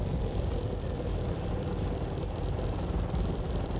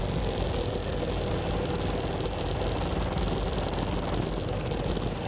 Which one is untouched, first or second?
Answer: second